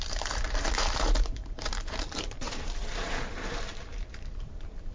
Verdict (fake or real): fake